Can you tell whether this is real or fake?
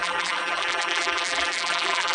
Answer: fake